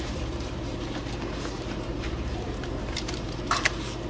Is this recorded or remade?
remade